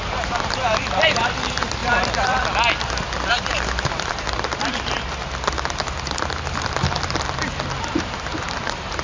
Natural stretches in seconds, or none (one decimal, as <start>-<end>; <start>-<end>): 1.8-3.3; 5.2-7.8

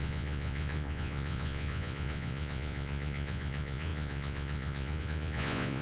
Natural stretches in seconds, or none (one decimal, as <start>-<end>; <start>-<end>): none

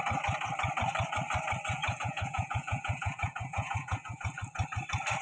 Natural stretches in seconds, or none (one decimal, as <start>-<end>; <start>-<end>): 0.0-1.8; 4.2-5.2

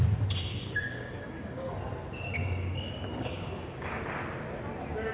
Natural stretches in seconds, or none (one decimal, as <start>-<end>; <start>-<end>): 0.0-0.5; 1.7-2.4; 4.0-5.1

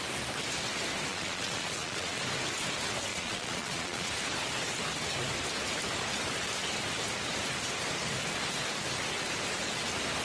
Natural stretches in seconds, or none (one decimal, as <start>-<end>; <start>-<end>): 0.0-1.1; 2.2-3.1; 4.1-10.2

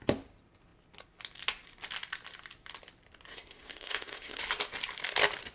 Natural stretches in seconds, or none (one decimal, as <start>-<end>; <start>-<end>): 0.0-3.3; 4.4-5.5

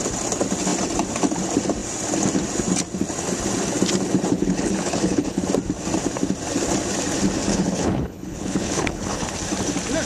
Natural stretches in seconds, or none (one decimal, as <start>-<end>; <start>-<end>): 0.0-4.3; 5.4-7.5; 9.3-10.0